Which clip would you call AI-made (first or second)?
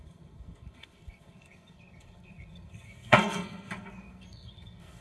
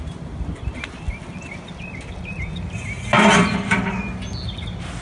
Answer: first